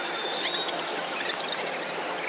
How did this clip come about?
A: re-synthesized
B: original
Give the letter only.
B